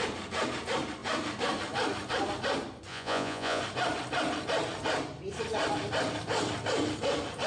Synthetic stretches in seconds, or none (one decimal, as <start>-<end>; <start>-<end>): 2.9-3.6